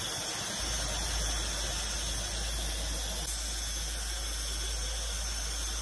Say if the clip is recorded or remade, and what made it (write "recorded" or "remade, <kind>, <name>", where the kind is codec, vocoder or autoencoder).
recorded